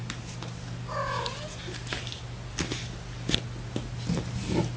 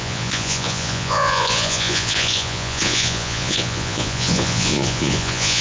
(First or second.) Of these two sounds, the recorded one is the first